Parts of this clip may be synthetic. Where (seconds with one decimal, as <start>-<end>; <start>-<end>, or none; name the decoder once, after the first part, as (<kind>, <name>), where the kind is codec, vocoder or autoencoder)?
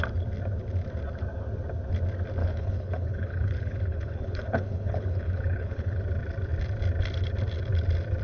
2.4-6.0 (codec, HILCodec)